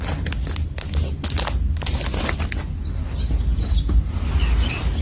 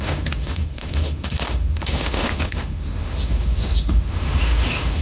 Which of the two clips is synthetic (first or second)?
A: second